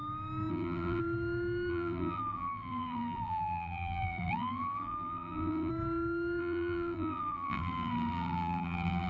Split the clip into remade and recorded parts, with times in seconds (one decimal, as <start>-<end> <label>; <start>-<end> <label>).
0.0-0.5 recorded; 0.5-1.0 remade; 1.0-1.7 recorded; 1.7-5.7 remade; 5.7-6.4 recorded; 6.4-9.1 remade